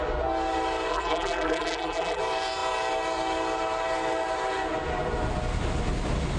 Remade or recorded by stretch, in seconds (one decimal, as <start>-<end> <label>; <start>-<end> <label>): 0.0-0.9 recorded; 0.9-2.2 remade; 2.2-6.4 recorded